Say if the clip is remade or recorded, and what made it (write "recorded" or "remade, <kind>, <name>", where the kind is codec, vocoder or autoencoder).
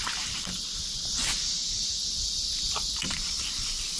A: remade, vocoder, BigVGAN v2